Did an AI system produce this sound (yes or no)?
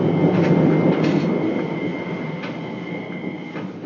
no